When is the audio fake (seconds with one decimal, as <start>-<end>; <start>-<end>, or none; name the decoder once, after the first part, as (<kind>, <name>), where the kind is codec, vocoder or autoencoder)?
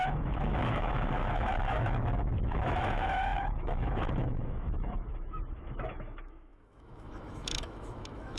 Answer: 0.0-8.4 (autoencoder, DAC-VAE)